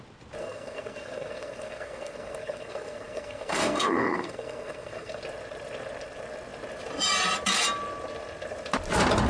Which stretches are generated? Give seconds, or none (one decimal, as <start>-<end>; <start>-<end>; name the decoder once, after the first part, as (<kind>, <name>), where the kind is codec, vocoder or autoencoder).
0.4-5.2 (codec, SNAC)